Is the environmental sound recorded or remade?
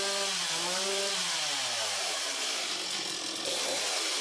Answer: remade